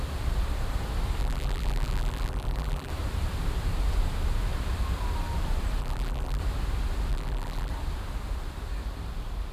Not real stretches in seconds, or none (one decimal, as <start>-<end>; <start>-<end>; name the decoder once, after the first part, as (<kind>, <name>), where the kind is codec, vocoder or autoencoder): 1.2-2.9 (vocoder, BigVGAN v2); 5.8-6.4; 7.1-7.7